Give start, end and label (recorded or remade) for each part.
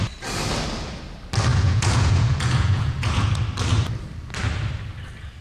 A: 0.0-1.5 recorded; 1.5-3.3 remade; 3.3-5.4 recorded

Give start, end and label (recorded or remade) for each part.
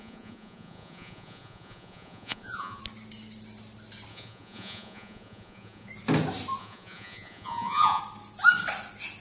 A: 0.0-2.8 remade; 2.8-4.1 recorded; 4.1-5.9 remade; 5.9-6.6 recorded; 6.6-8.0 remade; 8.0-9.2 recorded